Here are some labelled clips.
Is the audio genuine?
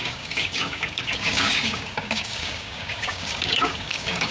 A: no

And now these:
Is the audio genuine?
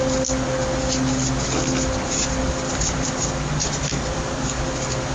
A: yes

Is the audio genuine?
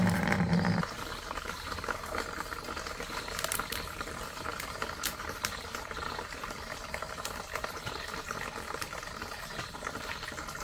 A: no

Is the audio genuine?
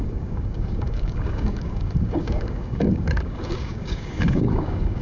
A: no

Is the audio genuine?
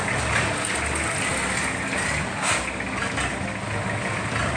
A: yes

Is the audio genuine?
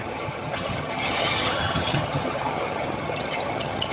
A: no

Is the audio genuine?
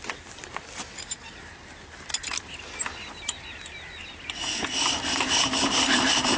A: yes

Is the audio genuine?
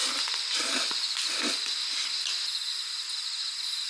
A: yes